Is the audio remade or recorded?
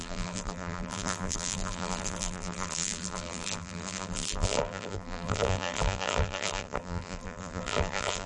remade